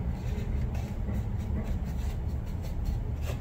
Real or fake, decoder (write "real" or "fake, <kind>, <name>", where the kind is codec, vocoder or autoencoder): real